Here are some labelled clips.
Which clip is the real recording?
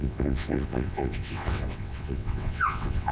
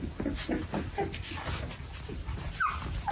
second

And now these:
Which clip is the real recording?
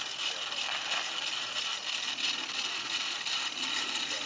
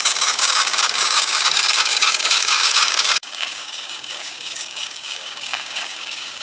first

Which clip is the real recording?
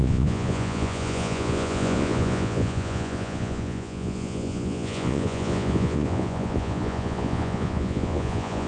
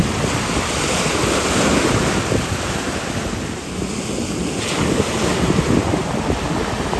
second